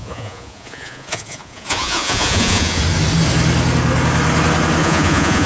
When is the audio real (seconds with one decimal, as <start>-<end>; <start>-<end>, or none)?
2.8-4.8